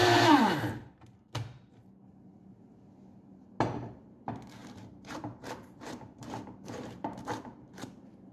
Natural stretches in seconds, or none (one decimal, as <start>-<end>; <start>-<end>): 1.7-4.6; 7.9-8.3